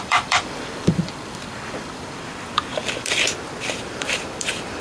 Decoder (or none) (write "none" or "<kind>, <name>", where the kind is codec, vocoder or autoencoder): vocoder, BigVGAN v2